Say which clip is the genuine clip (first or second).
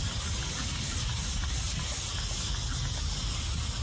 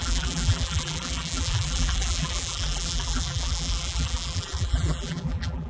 first